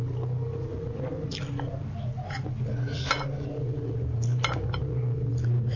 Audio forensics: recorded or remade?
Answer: recorded